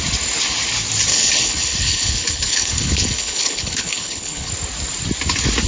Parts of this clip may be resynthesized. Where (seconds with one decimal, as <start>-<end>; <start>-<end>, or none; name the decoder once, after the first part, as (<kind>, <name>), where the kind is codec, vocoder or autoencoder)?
1.1-4.5 (codec, HILCodec)